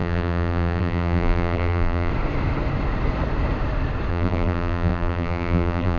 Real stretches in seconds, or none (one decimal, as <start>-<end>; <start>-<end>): 2.1-4.1